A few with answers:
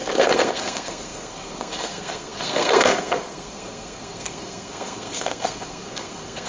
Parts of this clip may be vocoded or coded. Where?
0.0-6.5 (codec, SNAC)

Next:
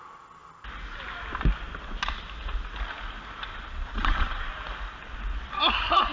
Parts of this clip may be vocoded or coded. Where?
3.5-4.5 (vocoder, Vocos)